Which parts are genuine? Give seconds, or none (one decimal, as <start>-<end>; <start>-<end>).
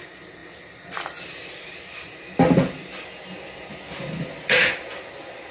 0.0-5.5